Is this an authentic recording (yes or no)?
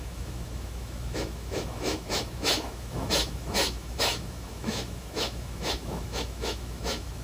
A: no